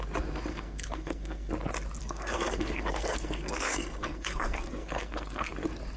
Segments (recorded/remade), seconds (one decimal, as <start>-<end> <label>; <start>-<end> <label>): 0.0-0.5 recorded; 0.5-1.5 remade; 1.5-2.0 recorded; 2.0-5.5 remade; 5.5-6.0 recorded